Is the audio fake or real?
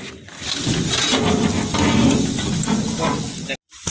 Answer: real